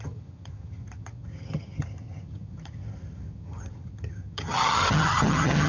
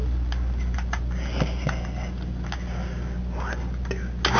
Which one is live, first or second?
second